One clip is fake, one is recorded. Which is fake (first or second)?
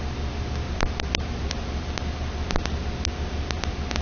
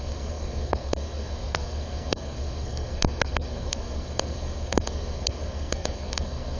second